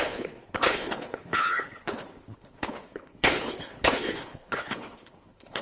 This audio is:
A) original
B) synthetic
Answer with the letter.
B